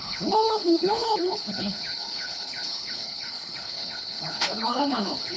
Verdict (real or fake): fake